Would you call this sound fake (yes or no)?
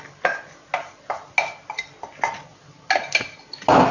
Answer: no